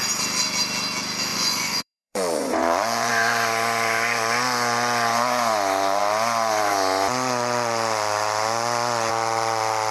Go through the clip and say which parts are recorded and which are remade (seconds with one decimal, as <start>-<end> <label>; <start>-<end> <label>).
0.0-1.3 recorded; 1.3-3.1 remade; 3.1-9.9 recorded